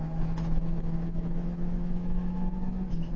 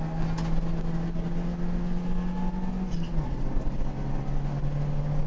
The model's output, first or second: first